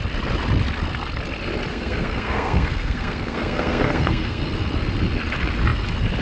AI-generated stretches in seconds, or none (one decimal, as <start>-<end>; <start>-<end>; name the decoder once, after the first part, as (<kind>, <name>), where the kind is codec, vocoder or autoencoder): 1.7-4.4 (codec, SNAC)